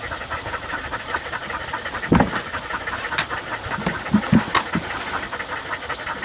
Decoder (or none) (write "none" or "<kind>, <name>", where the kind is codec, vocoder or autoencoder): none